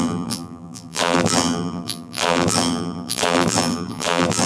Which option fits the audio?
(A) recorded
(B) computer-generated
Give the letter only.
B